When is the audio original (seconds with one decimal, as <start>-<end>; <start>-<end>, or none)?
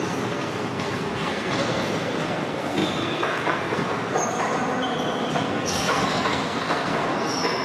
4.2-5.3